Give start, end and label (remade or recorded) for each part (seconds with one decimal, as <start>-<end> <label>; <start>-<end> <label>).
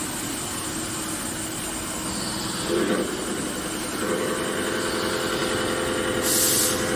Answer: 0.0-7.0 recorded